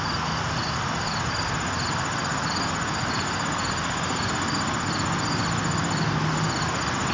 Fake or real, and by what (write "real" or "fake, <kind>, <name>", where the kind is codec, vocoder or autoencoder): real